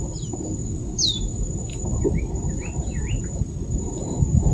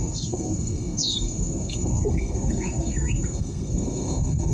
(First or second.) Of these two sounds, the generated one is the second